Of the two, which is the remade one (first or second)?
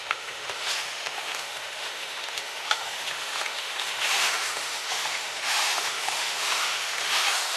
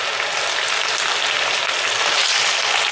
first